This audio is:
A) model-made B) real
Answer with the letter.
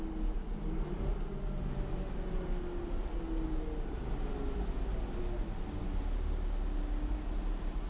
B